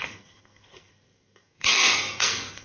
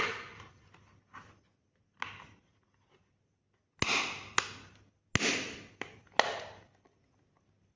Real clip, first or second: second